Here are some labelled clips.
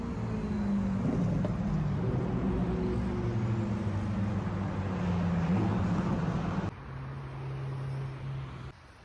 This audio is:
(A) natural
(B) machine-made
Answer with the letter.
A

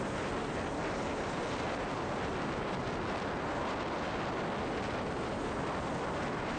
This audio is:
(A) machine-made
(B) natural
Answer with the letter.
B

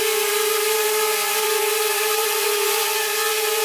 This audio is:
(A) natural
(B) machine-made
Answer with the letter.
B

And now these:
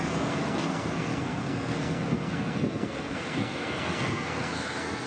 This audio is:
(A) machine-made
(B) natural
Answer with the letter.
A